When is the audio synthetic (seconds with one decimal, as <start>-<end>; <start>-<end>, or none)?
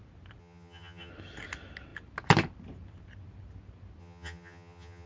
0.4-1.1; 4.0-5.1